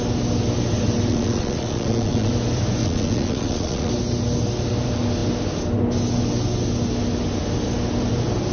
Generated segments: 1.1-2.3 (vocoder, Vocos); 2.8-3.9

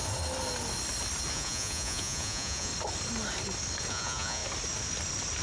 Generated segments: 1.3-2.7 (vocoder, Vocos); 3.9-4.4

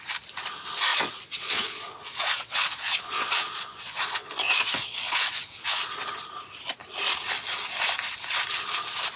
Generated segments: 0.9-5.8 (vocoder, Vocos)

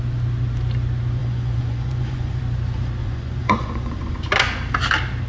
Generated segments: 1.2-2.4 (vocoder, Vocos); 3.0-4.2

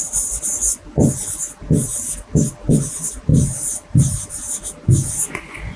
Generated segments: 0.0-0.8 (vocoder, Vocos); 2.7-3.3; 5.1-5.8

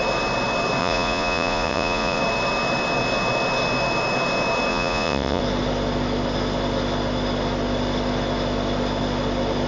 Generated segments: 0.8-2.2 (vocoder, Vocos); 4.7-5.4

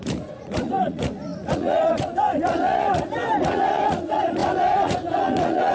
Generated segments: 0.0-5.7 (vocoder, Vocos)